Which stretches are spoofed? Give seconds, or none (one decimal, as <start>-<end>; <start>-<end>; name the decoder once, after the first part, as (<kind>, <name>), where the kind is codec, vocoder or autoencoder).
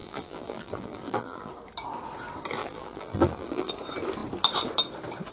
0.0-1.5 (vocoder, BigVGAN v2); 2.6-3.7